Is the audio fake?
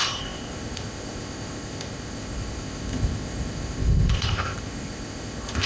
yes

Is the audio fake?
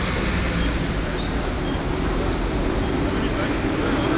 no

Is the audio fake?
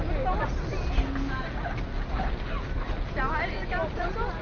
no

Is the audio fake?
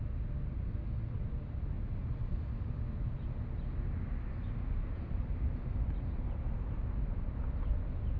no